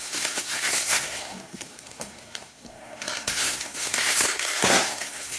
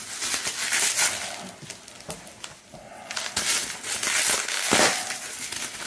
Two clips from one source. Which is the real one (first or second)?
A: second